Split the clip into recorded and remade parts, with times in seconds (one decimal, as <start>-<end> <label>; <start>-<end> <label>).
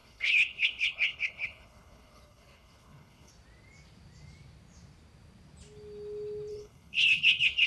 0.0-3.3 remade; 3.3-6.5 recorded; 6.5-7.7 remade